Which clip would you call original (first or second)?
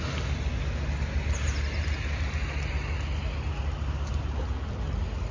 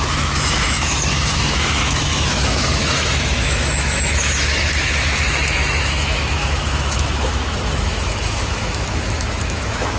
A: first